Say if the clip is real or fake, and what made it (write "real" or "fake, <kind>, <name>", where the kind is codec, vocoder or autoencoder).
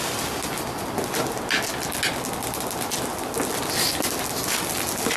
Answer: real